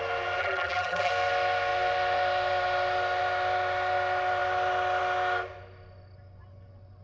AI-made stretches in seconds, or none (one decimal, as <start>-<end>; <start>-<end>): 0.4-1.1